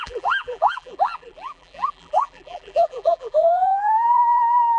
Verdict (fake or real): fake